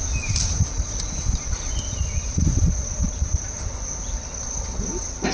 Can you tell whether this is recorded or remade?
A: recorded